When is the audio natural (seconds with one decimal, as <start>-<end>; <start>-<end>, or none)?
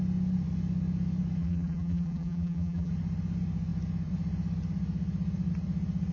0.0-1.4; 2.9-6.1